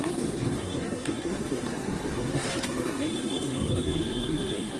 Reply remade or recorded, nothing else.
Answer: remade